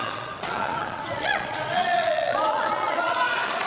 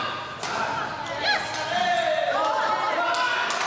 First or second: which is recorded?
second